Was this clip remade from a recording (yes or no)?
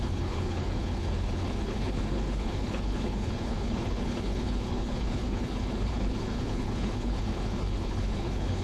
yes